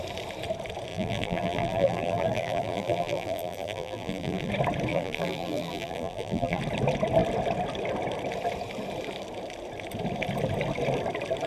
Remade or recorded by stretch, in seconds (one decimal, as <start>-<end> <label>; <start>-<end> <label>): 0.0-0.9 recorded; 0.9-4.5 remade; 4.5-4.9 recorded; 4.9-6.6 remade; 6.6-11.5 recorded